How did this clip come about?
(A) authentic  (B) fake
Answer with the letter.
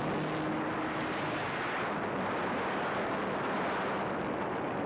A